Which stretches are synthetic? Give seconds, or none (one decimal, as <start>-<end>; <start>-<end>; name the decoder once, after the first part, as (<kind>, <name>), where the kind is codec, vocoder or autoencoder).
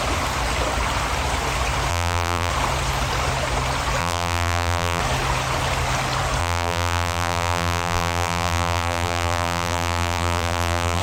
1.9-2.5 (vocoder, BigVGAN v2); 4.0-5.0; 6.4-11.0